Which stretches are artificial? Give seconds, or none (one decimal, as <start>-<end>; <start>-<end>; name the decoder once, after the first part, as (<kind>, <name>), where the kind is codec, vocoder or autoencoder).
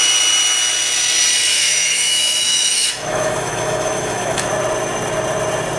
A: 1.5-4.5 (autoencoder, DAC-VAE)